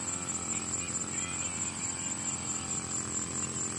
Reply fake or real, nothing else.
real